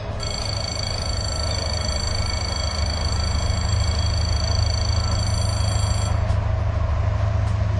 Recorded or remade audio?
recorded